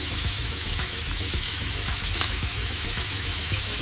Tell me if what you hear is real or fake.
fake